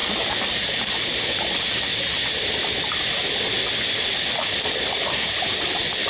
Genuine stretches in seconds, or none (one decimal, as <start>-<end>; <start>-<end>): 0.0-3.6